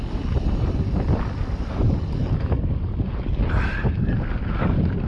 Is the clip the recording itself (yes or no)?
yes